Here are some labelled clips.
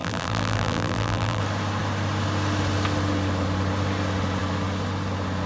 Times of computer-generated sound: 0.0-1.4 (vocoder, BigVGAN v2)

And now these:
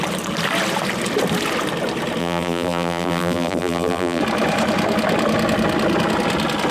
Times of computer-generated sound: 2.2-4.2 (vocoder, BigVGAN v2)

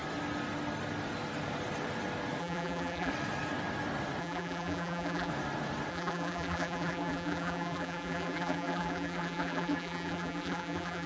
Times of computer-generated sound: 2.4-3.1 (vocoder, BigVGAN v2); 4.2-5.3; 5.9-11.1

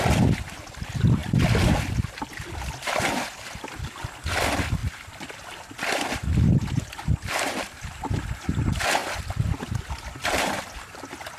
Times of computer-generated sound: 4.8-8.0 (vocoder, BigVGAN v2)

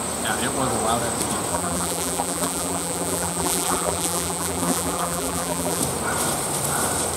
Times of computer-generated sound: 1.5-5.8 (vocoder, BigVGAN v2)

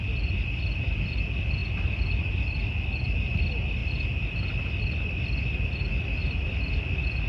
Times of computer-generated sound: 6.2-6.8 (vocoder, BigVGAN v2)

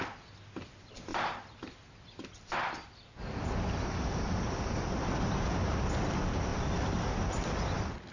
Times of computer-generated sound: 1.1-3.5 (vocoder, BigVGAN v2); 6.5-8.1